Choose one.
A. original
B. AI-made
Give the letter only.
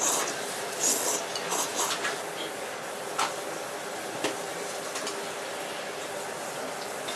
A